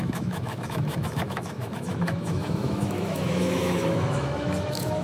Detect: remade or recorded remade